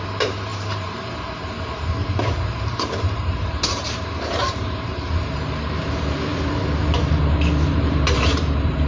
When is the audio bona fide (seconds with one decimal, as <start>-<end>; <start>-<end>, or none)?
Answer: 6.3-7.8